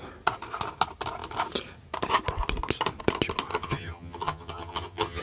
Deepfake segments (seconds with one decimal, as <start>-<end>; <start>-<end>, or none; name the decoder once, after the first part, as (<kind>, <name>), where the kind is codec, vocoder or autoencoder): 3.5-5.2 (vocoder, HiFi-GAN)

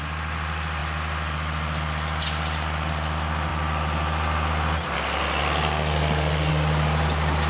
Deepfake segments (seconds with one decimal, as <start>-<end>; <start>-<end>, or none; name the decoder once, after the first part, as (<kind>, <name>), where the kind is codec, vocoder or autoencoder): none

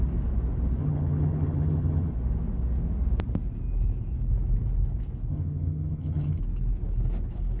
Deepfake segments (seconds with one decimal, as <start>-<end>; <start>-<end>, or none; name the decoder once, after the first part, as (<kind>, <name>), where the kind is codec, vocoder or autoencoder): 0.8-2.1 (vocoder, HiFi-GAN); 5.3-6.4